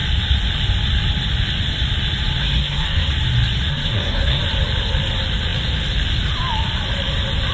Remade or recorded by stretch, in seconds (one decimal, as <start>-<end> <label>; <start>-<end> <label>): 0.0-2.4 recorded; 2.4-3.1 remade; 3.1-3.7 recorded; 3.7-4.4 remade; 4.4-7.5 recorded